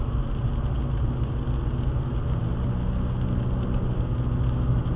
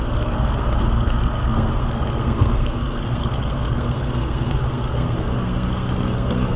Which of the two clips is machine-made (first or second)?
second